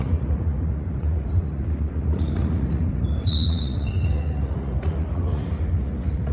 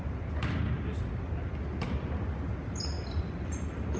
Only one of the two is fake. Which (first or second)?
first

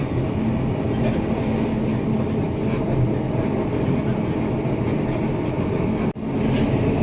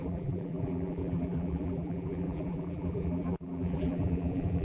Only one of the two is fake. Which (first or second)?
second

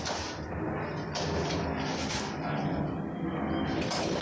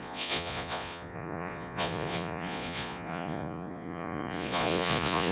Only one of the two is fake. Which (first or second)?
second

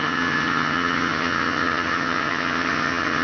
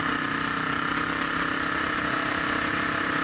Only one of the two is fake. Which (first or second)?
first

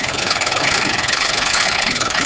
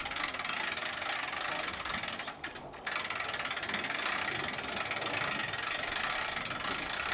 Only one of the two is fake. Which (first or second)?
first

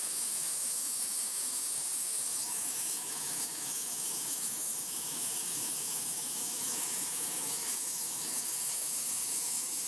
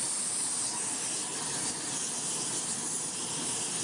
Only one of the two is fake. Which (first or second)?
first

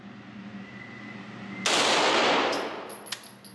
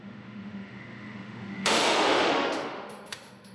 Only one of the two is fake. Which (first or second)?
second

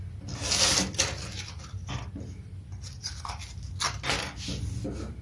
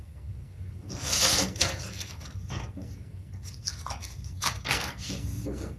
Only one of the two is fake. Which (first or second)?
second